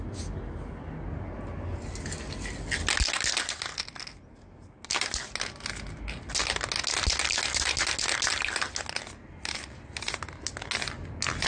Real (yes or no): yes